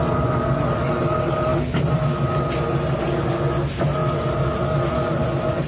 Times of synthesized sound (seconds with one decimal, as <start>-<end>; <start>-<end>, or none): none